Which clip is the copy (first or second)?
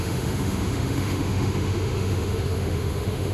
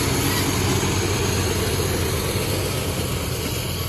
first